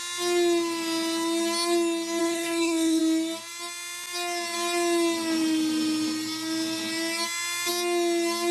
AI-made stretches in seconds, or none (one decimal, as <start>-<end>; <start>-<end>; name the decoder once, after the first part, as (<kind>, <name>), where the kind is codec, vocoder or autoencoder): 2.2-3.0 (codec, SNAC)